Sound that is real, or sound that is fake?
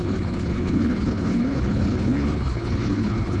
fake